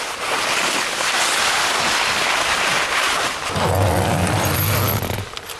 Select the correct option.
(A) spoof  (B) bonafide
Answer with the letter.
B